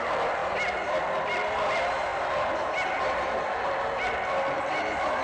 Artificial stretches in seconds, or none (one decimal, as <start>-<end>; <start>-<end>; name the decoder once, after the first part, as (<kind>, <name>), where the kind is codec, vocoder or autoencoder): none